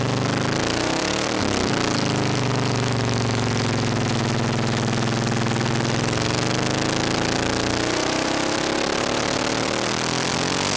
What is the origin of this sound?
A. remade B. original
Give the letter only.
B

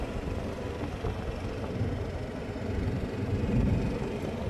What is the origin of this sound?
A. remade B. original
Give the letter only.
B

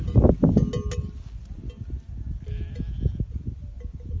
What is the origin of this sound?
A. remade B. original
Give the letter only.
B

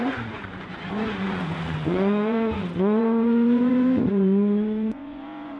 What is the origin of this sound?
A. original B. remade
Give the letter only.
B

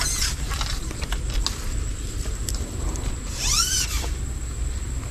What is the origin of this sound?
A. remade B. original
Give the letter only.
B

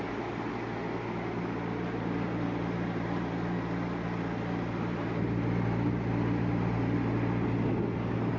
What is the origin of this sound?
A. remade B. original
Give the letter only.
B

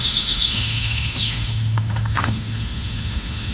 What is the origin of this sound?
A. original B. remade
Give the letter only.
B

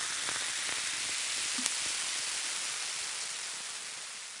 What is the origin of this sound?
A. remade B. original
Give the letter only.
B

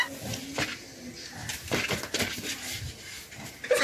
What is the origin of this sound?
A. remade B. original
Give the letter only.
B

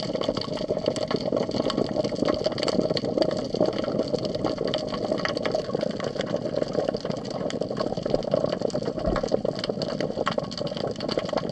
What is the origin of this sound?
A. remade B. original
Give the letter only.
B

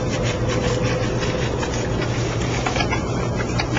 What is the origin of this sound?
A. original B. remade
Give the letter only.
B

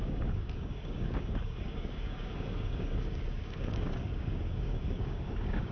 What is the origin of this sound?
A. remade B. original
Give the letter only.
A